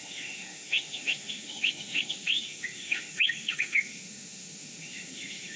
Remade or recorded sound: remade